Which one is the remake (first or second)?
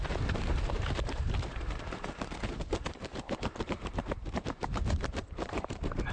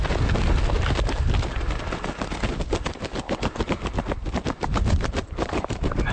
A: first